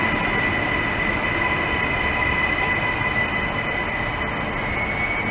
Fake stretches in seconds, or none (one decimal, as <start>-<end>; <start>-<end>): none